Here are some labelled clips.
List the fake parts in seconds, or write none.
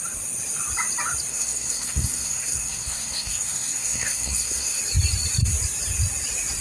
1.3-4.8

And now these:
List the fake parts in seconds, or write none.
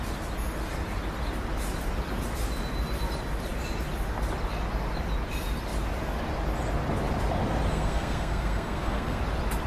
7.7-9.2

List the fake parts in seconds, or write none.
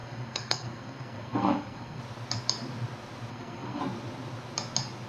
0.0-2.0; 3.3-3.8